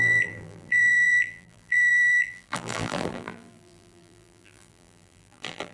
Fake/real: fake